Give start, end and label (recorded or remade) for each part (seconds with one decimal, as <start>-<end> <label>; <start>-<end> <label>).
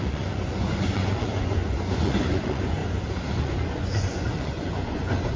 0.0-2.8 remade; 2.8-3.4 recorded; 3.4-5.4 remade